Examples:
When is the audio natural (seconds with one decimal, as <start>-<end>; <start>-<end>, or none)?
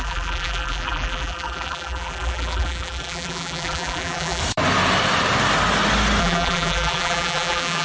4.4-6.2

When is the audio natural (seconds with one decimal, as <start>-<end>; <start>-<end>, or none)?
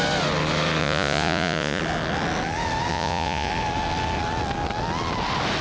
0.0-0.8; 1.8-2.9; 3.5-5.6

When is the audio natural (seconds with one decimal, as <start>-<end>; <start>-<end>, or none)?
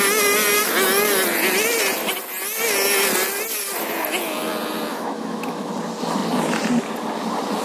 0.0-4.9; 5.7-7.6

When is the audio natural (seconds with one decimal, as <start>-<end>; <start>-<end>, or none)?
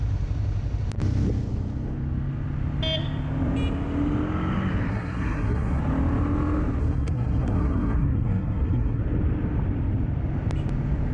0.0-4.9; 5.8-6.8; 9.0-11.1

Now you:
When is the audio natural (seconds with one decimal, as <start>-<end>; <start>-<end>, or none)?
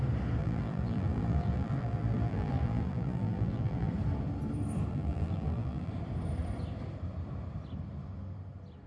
0.0-0.4; 3.9-4.9; 5.9-8.9